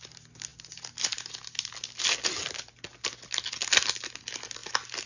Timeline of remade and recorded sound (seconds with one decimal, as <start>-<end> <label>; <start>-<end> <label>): 0.0-5.1 recorded